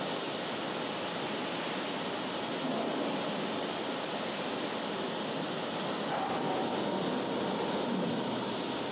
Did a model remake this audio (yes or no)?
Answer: no